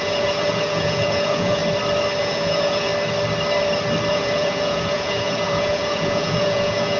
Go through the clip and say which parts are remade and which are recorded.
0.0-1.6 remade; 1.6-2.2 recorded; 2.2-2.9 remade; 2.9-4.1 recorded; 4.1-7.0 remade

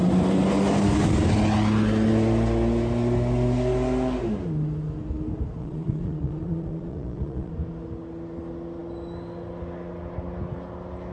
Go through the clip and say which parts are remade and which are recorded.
0.0-5.6 recorded; 5.6-7.5 remade; 7.5-11.1 recorded

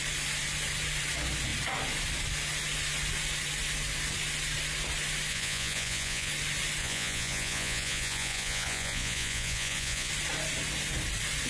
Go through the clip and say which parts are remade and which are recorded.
0.0-5.3 recorded; 5.3-6.3 remade; 6.3-6.8 recorded; 6.8-10.1 remade; 10.1-11.5 recorded

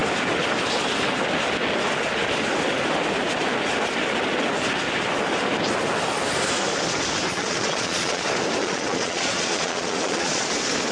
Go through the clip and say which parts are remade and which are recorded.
0.0-7.3 recorded; 7.3-8.2 remade; 8.2-8.6 recorded; 8.6-10.5 remade; 10.5-10.9 recorded

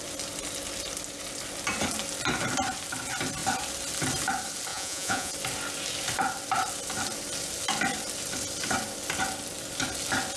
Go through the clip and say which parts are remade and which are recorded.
0.0-4.7 recorded; 4.7-5.3 remade; 5.3-10.4 recorded

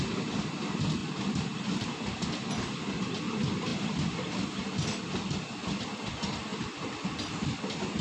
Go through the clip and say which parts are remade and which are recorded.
0.0-8.0 recorded